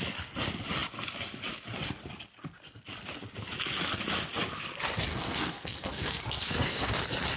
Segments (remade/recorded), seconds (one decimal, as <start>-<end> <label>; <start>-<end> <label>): 0.0-5.1 recorded; 5.1-6.9 remade; 6.9-7.4 recorded